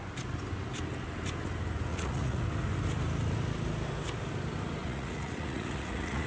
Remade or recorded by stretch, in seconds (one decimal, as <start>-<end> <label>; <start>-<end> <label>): 0.0-1.9 recorded; 1.9-2.4 remade; 2.4-4.8 recorded; 4.8-6.3 remade